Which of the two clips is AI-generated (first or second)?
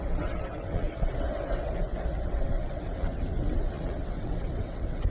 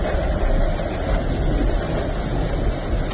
first